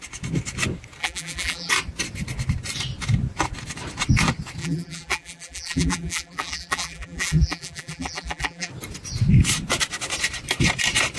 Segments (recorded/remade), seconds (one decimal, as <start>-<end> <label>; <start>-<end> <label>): 0.0-1.0 recorded; 1.0-1.7 remade; 1.7-4.6 recorded; 4.6-8.7 remade; 8.7-11.2 recorded